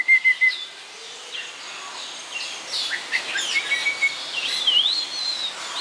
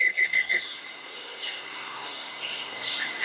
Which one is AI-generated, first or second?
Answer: second